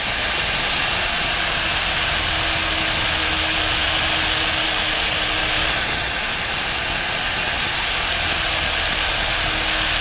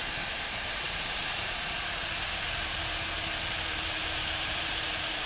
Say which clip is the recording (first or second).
first